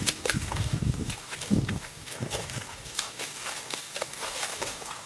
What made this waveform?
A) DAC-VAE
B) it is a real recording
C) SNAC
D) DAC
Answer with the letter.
D